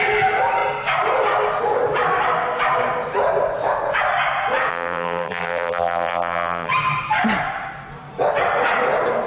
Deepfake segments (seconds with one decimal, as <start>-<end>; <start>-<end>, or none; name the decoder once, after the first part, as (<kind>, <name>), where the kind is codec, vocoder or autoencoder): 4.7-6.7 (vocoder, BigVGAN v2)